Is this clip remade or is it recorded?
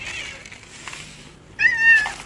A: recorded